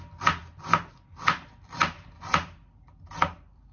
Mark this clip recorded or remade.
recorded